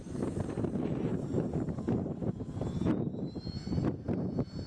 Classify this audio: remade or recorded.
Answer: remade